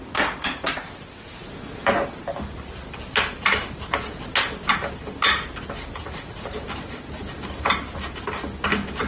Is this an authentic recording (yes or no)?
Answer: yes